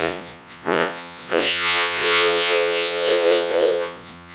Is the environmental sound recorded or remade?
remade